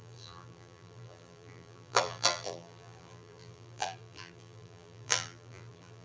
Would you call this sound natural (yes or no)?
no